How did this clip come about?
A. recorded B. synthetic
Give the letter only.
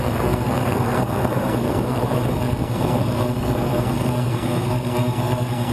B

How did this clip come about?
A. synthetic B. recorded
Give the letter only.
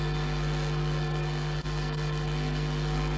A